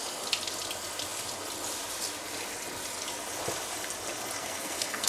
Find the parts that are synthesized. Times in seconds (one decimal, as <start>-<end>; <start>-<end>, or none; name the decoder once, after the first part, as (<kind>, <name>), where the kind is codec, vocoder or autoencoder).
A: 4.4-5.1 (codec, SNAC)